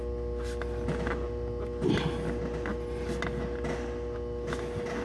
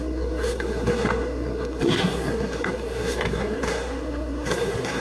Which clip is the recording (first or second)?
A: first